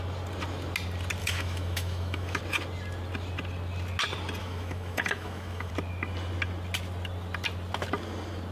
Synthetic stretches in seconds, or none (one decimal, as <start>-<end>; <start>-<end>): 1.2-2.4; 4.4-5.7